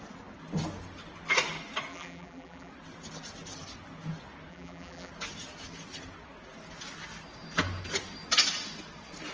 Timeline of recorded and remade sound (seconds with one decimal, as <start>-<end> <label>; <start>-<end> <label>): 0.0-1.9 recorded; 1.9-2.7 remade; 2.7-4.5 recorded; 4.5-5.1 remade; 5.1-9.3 recorded